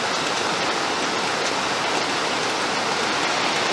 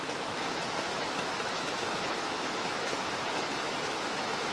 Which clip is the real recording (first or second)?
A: first